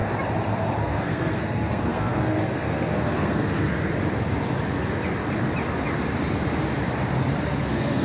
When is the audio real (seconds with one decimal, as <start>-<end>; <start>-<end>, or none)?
0.0-0.8; 3.8-7.6